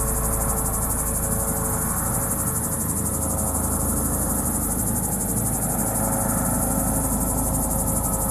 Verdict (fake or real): real